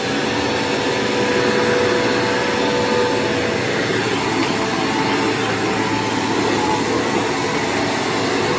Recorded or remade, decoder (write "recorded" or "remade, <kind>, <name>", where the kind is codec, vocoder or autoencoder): recorded